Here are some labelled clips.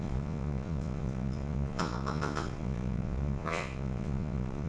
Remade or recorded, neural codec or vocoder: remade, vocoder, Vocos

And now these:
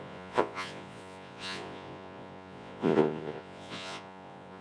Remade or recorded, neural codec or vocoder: remade, vocoder, Vocos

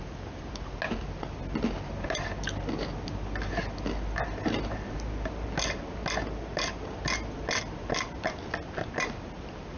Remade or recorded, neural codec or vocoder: recorded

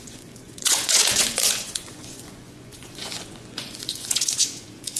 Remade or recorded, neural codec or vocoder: remade, vocoder, Vocos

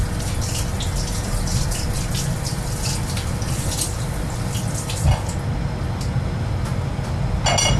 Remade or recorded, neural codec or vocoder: recorded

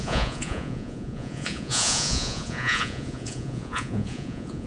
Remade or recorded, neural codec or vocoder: remade, vocoder, Vocos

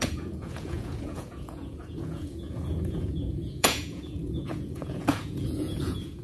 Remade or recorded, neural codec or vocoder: remade, vocoder, Vocos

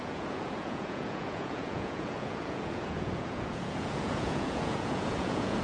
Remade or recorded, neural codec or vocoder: remade, vocoder, Vocos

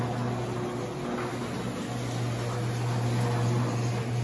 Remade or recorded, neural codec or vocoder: recorded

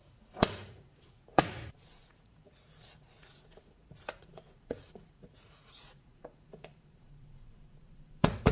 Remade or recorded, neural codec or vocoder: remade, vocoder, Vocos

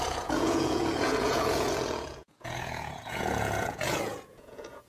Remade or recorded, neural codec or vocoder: remade, vocoder, Vocos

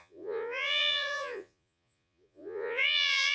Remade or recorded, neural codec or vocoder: remade, vocoder, Vocos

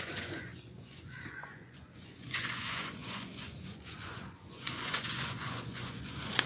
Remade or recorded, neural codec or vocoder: remade, vocoder, Vocos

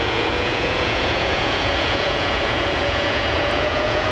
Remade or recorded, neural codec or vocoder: remade, vocoder, Vocos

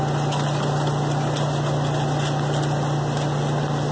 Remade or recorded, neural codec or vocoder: recorded